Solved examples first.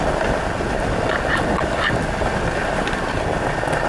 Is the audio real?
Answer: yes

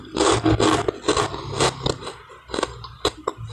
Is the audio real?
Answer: yes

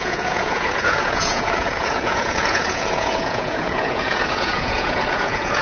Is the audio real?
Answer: no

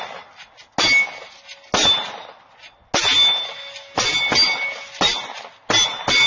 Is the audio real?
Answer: yes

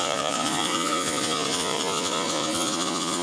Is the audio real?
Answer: no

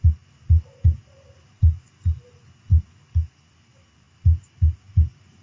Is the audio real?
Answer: yes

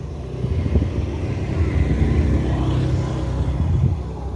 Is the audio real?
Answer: yes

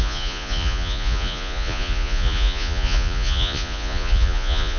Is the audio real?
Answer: no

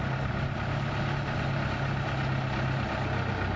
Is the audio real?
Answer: yes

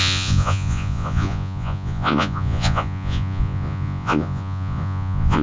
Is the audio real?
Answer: no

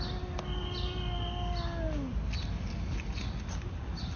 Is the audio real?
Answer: yes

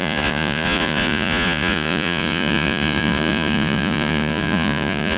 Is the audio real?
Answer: no